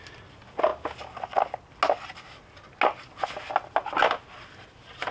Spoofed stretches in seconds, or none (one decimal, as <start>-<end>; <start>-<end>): none